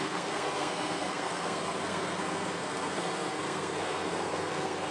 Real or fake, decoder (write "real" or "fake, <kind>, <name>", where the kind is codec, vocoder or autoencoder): fake, codec, SNAC